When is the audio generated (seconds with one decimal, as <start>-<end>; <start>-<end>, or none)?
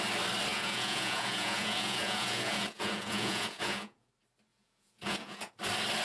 0.5-4.1; 4.5-5.5